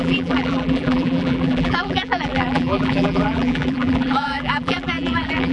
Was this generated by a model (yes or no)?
yes